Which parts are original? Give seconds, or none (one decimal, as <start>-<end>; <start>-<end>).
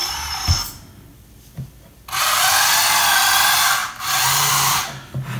0.0-5.4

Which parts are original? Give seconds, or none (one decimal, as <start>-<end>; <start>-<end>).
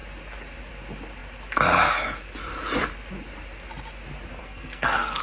0.0-4.4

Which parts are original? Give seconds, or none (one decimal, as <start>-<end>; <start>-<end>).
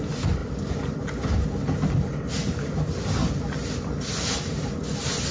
0.0-5.3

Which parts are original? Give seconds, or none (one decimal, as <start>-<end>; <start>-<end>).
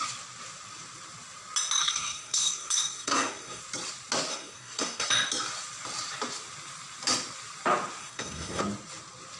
0.0-1.8; 3.6-4.3; 5.1-8.0; 8.6-9.4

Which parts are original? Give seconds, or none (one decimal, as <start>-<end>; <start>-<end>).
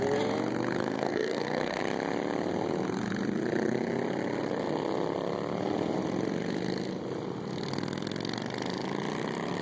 0.0-0.8; 1.8-9.6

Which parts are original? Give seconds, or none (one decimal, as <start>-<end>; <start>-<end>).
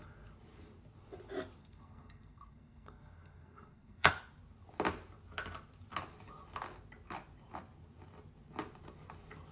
0.0-1.6; 4.1-9.5